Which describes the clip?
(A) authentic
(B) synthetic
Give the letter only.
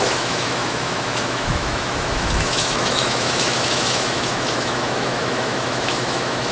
B